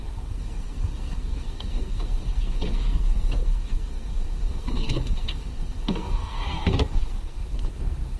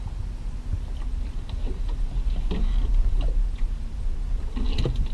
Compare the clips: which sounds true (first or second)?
second